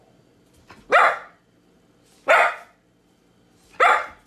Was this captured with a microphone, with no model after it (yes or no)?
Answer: yes